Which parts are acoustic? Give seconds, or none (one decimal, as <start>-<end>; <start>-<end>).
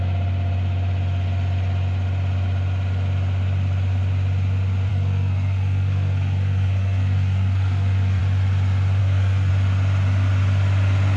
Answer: 0.0-4.9; 8.2-9.0; 9.5-11.2